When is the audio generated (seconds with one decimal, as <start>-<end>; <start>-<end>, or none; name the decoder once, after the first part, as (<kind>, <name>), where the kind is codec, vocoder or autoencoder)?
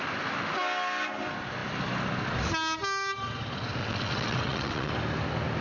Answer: 3.8-4.9 (vocoder, WaveNeXt)